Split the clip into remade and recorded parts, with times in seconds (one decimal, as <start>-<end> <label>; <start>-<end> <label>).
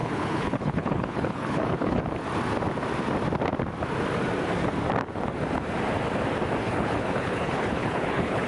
0.0-2.0 remade; 2.0-6.6 recorded; 6.6-8.5 remade